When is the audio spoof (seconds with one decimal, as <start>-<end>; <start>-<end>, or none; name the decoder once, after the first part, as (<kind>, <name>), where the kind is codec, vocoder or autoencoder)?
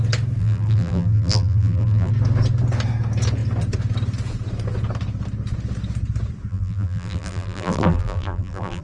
0.4-2.1 (vocoder, BigVGAN v2); 6.5-8.8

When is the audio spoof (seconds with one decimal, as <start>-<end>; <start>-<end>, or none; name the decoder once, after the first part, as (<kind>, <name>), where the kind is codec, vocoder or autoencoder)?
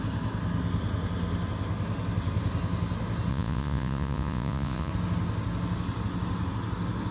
3.3-4.9 (vocoder, Vocos)